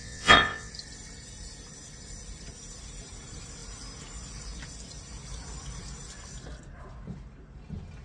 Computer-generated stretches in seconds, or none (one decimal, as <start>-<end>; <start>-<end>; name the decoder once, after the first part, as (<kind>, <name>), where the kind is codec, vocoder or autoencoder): 0.0-0.7 (vocoder, WaveNeXt)